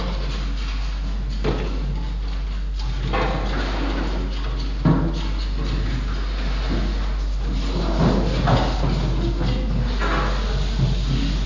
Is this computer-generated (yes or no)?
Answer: no